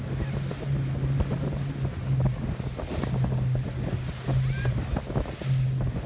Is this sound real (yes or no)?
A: yes